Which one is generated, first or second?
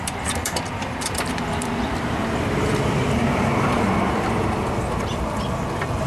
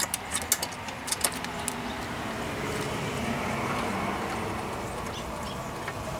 first